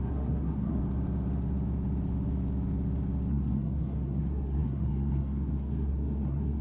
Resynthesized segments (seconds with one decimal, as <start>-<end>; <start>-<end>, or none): 0.0-0.8; 3.3-6.6